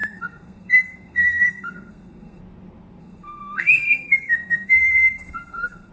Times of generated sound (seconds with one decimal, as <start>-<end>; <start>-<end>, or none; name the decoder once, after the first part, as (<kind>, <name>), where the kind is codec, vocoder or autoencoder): 0.0-2.4 (codec, SNAC); 3.0-5.9